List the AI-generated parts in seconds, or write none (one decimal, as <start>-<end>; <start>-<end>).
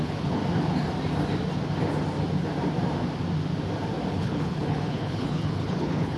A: 0.0-0.4; 4.1-6.2